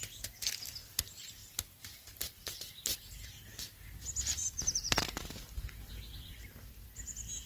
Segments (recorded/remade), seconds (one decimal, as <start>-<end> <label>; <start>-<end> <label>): 0.0-1.4 recorded; 1.4-5.9 remade; 5.9-7.5 recorded